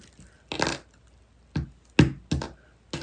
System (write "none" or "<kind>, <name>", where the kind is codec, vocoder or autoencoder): none